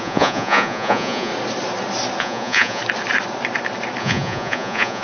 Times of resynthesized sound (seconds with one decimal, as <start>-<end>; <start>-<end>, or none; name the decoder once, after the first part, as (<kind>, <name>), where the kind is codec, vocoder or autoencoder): 0.0-1.3 (vocoder, Vocos); 2.2-2.8; 4.0-5.0